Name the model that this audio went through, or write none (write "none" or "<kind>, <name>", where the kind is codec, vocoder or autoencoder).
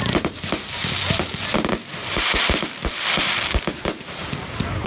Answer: vocoder, BigVGAN v2